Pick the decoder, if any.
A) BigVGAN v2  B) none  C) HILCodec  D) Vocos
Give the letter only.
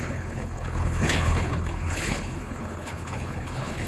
C